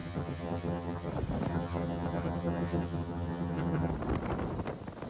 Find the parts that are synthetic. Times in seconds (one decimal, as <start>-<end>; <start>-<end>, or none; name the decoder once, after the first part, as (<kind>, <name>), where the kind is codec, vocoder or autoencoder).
0.0-1.1 (vocoder, HiFi-GAN); 1.5-3.9